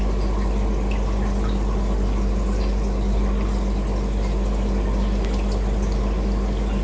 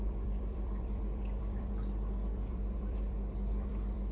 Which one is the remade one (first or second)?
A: second